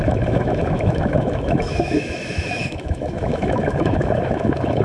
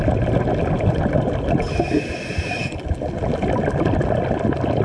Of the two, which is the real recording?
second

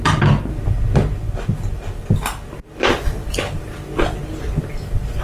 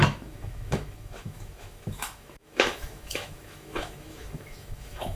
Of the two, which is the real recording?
first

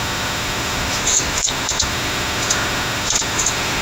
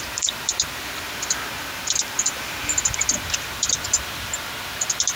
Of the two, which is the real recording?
second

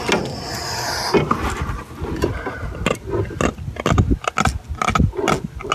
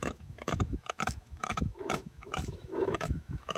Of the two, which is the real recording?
first